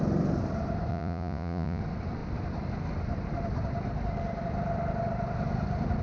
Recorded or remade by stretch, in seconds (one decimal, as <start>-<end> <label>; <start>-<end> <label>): 0.0-0.9 recorded; 0.9-1.8 remade; 1.8-6.0 recorded